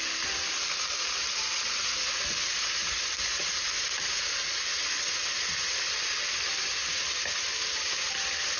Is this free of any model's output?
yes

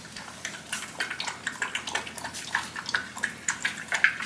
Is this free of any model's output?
yes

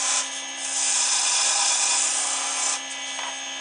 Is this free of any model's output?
yes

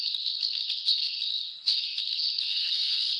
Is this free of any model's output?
no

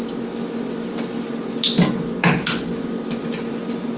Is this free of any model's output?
yes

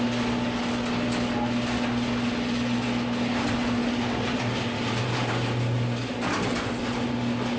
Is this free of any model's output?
yes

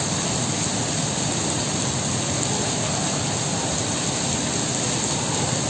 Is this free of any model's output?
yes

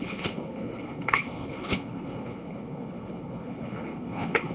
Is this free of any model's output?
no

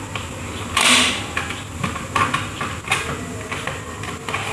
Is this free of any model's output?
yes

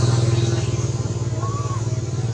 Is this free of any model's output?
yes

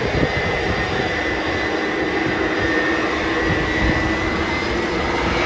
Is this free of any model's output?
yes